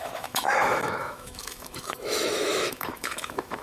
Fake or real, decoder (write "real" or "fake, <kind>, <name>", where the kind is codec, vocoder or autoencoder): fake, autoencoder, DAC-VAE